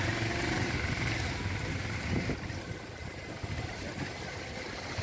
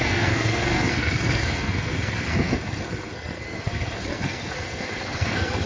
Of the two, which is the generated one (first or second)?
second